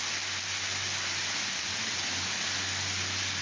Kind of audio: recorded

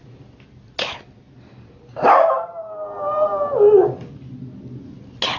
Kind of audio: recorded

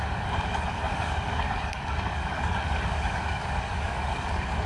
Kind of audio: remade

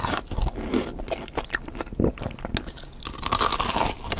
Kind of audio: recorded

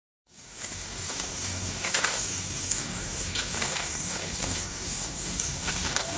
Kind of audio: remade